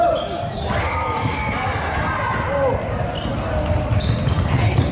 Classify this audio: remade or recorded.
recorded